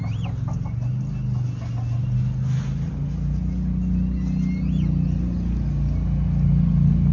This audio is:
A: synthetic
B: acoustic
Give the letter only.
B